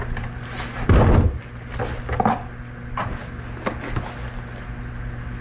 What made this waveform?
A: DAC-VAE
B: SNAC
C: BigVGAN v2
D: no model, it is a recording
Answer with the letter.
D